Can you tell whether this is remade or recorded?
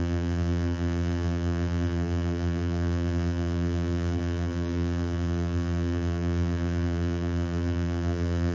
remade